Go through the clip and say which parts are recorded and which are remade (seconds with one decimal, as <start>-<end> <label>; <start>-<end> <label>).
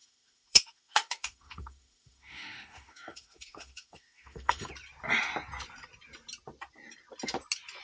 0.0-4.7 remade; 4.7-7.8 recorded